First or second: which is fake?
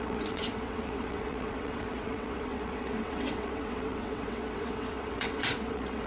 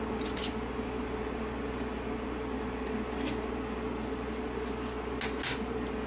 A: first